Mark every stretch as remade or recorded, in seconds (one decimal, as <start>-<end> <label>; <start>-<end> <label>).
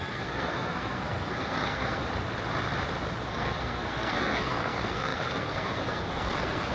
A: 0.0-2.0 remade; 2.0-3.3 recorded; 3.3-6.7 remade